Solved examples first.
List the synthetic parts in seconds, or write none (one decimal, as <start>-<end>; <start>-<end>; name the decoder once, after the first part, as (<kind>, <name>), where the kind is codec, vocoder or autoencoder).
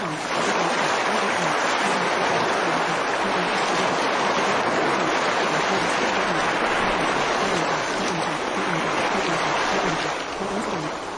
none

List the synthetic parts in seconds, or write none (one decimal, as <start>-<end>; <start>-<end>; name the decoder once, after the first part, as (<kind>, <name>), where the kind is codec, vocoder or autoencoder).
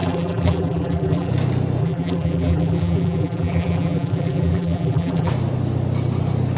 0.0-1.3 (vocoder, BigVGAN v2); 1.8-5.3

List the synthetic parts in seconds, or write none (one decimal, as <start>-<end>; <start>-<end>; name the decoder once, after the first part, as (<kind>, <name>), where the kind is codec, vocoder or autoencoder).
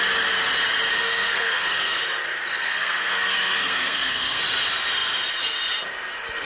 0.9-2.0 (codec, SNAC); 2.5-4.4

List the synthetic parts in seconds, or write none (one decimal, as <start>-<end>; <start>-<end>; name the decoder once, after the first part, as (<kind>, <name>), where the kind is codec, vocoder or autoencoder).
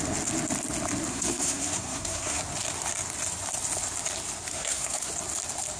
1.1-2.4 (codec, SNAC); 4.5-5.1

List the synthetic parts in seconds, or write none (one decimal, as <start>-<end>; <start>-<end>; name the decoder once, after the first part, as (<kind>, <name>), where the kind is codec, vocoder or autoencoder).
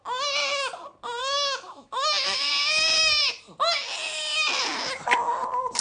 1.2-2.5 (autoencoder, DAC-VAE)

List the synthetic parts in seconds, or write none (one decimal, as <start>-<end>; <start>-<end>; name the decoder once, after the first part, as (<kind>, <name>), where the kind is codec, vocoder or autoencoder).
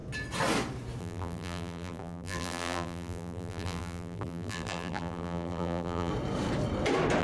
1.0-6.1 (vocoder, BigVGAN v2)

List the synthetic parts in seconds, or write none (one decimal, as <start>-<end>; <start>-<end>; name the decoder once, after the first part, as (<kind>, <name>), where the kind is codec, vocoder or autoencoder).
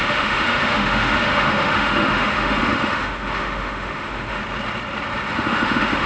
0.0-4.4 (autoencoder, DAC-VAE); 5.2-6.1